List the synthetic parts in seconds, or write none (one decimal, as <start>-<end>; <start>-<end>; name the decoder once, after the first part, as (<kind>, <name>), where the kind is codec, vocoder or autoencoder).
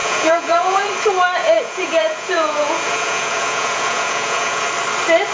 0.0-0.9 (vocoder, Vocos); 1.4-4.6